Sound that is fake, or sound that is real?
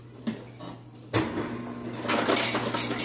real